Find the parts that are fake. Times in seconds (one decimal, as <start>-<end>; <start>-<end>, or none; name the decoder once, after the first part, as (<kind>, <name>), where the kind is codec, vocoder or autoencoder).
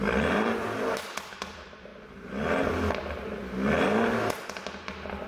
0.0-1.9 (vocoder, BigVGAN v2)